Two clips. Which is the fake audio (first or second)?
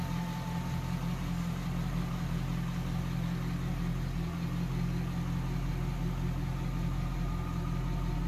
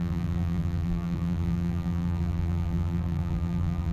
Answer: second